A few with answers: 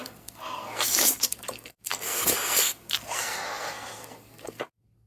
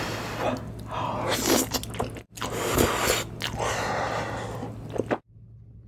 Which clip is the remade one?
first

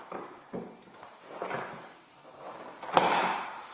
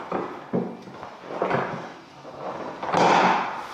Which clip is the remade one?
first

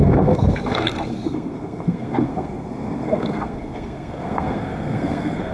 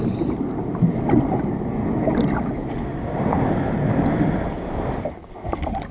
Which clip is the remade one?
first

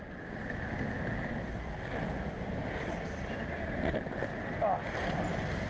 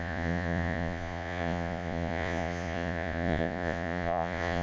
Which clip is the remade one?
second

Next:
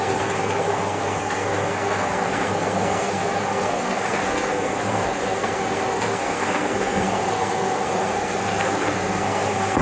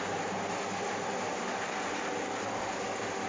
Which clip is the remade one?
first